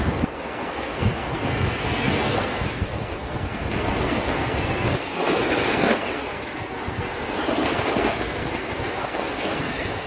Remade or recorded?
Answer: remade